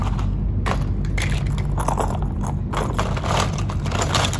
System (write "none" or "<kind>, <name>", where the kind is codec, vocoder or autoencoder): none